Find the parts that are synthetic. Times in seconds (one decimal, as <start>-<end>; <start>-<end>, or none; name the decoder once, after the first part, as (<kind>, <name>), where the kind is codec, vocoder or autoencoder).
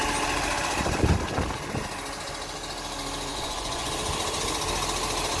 3.3-3.9 (vocoder, Vocos)